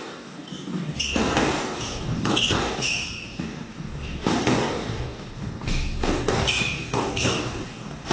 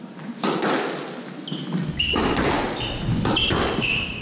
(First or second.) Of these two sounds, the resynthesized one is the first